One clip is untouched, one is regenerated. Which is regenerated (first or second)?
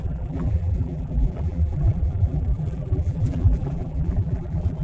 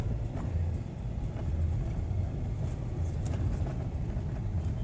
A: first